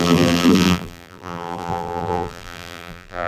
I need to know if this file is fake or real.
fake